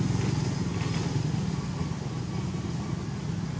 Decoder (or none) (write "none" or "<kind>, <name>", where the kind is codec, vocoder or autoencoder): none